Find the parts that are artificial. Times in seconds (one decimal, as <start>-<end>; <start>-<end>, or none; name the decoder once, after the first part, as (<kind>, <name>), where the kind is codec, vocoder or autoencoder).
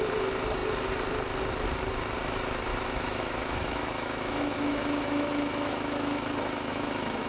2.7-7.3 (autoencoder, DAC-VAE)